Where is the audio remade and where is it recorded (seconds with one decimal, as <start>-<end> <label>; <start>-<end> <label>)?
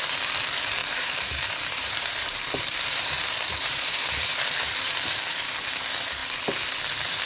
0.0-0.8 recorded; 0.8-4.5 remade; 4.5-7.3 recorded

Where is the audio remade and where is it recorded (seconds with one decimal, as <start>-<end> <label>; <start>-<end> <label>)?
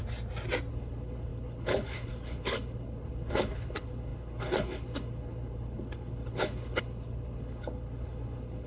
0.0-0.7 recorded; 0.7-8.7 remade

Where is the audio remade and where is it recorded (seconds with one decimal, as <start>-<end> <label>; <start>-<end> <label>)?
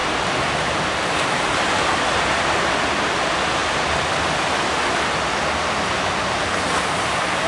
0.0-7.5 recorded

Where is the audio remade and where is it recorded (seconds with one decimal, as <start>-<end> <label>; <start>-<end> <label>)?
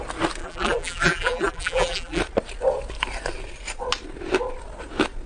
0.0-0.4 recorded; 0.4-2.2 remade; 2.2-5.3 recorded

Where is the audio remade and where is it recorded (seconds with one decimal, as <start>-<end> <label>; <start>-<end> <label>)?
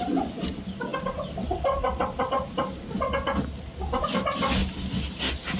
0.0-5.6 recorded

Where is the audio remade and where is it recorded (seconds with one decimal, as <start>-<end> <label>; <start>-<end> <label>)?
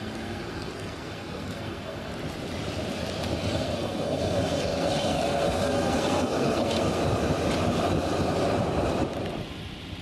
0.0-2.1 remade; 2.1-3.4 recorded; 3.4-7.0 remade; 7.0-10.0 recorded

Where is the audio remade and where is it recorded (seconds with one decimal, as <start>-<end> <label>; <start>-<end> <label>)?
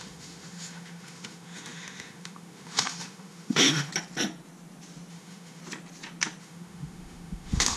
0.0-3.9 remade; 3.9-5.1 recorded; 5.1-5.6 remade; 5.6-6.4 recorded; 6.4-7.8 remade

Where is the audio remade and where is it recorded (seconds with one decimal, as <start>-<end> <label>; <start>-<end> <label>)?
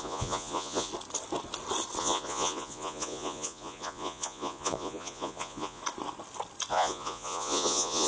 0.0-0.9 remade; 0.9-2.0 recorded; 2.0-5.8 remade; 5.8-6.7 recorded; 6.7-8.1 remade